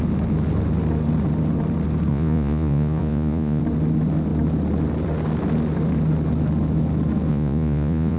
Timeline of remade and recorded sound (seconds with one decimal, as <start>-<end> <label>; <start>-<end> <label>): 0.0-2.1 recorded; 2.1-3.6 remade; 3.6-7.3 recorded; 7.3-8.2 remade